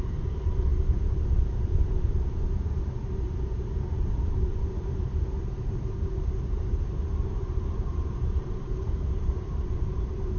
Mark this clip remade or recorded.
remade